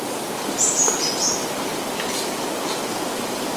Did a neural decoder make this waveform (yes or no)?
no